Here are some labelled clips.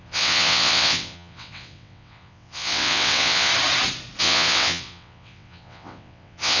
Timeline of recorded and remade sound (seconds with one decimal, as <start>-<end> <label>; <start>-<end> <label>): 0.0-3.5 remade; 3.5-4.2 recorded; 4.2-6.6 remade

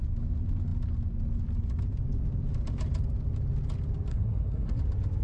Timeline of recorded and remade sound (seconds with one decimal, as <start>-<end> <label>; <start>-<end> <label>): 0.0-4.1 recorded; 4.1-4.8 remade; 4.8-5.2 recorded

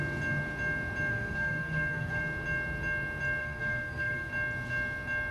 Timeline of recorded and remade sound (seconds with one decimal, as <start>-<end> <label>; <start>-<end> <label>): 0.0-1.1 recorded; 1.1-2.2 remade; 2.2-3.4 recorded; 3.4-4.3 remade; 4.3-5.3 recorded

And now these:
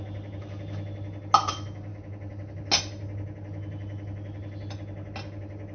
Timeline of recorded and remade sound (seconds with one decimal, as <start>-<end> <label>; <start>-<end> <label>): 0.0-5.7 recorded

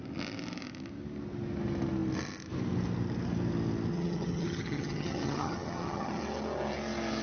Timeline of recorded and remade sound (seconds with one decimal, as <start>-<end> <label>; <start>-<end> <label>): 0.0-3.9 recorded; 3.9-6.2 remade; 6.2-7.2 recorded